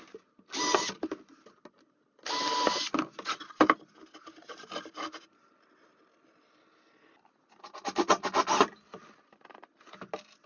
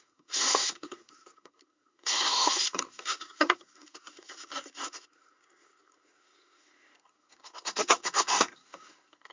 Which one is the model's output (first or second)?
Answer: second